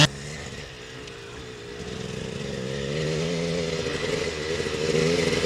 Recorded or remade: recorded